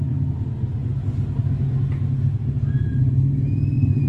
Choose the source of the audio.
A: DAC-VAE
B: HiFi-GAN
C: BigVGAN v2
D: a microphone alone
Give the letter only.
D